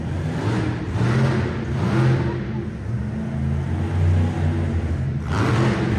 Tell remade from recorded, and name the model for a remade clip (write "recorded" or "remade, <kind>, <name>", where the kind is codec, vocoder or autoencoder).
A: recorded